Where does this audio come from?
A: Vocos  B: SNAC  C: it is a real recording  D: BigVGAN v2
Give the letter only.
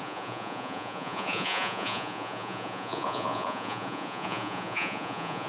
A